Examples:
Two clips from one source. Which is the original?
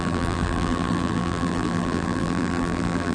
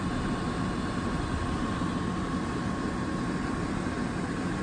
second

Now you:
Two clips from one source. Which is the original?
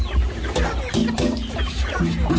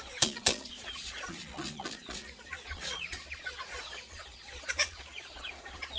first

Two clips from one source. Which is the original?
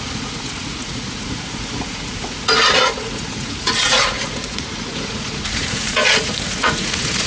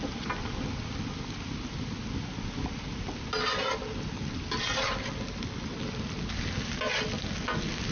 second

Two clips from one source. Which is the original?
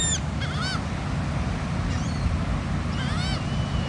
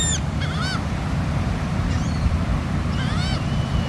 first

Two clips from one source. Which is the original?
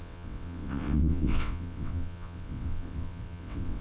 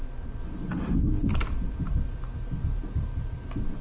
second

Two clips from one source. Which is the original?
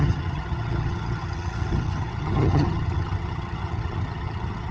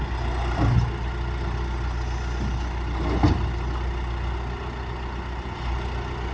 second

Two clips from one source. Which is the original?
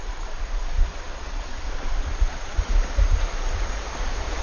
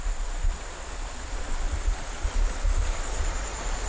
second